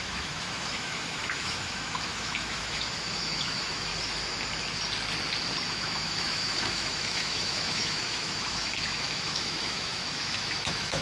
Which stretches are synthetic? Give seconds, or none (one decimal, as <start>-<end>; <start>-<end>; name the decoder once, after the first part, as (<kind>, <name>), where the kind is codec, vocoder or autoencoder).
0.0-3.9 (autoencoder, DAC-VAE); 5.7-11.0